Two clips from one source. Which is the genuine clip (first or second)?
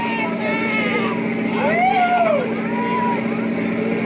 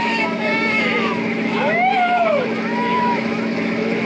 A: first